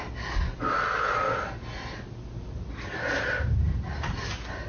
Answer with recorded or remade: recorded